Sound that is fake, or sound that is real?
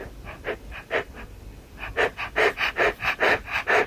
real